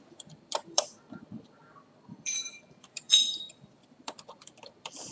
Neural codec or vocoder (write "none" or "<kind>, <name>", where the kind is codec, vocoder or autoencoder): vocoder, BigVGAN v2